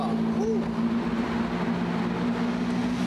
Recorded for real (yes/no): yes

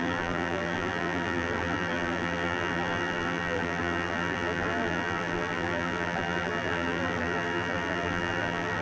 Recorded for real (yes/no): no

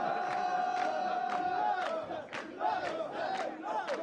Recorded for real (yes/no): yes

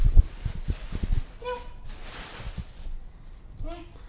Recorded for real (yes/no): yes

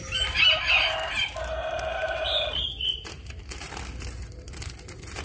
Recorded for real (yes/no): no